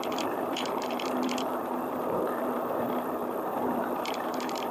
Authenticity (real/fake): fake